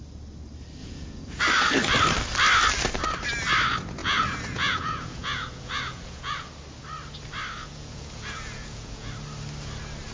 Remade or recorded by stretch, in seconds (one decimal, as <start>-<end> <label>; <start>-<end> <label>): 0.0-0.8 recorded; 0.8-1.4 remade; 1.4-4.0 recorded; 4.0-6.5 remade; 6.5-7.6 recorded; 7.6-9.1 remade; 9.1-10.1 recorded